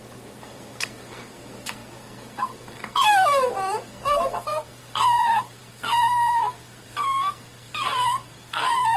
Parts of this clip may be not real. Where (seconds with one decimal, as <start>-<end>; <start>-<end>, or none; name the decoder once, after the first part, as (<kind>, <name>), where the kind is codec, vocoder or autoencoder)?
0.0-9.0 (codec, SNAC)